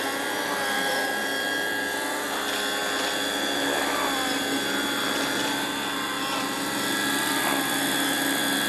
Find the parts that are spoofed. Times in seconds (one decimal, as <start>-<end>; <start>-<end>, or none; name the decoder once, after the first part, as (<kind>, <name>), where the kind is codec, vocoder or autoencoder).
none

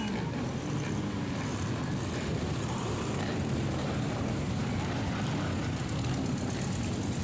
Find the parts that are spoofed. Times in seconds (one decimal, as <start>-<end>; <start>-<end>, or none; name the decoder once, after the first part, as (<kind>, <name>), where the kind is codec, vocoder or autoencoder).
2.3-4.3 (vocoder, BigVGAN v2)

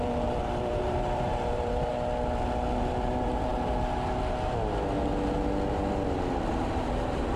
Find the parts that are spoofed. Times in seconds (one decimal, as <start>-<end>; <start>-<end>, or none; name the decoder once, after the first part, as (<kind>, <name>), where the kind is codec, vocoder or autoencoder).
0.0-1.9 (vocoder, BigVGAN v2); 2.8-3.5; 6.5-7.4

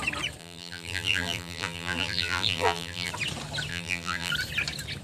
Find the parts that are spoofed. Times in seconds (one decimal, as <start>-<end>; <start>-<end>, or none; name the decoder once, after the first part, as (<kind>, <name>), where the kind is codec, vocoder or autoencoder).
0.4-3.1 (vocoder, BigVGAN v2); 3.7-4.3

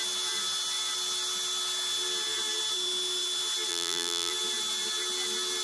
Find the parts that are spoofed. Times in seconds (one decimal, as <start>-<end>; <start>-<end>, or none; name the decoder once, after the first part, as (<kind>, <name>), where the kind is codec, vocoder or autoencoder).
3.7-4.3 (vocoder, BigVGAN v2)

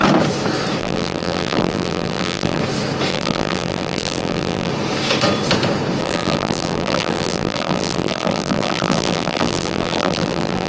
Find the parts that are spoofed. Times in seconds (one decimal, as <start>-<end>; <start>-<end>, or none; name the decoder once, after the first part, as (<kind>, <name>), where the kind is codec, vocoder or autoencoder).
0.8-2.6 (vocoder, BigVGAN v2); 3.1-4.7; 6.0-10.7

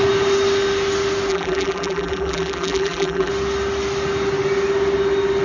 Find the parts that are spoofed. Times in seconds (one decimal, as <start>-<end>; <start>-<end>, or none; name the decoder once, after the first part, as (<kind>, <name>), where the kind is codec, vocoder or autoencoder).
1.3-3.3 (vocoder, BigVGAN v2)